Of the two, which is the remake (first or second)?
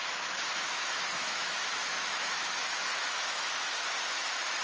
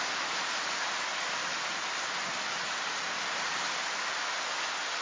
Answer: first